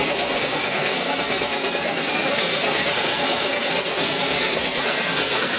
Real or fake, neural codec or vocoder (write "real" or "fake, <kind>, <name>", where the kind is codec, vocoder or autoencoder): fake, codec, SNAC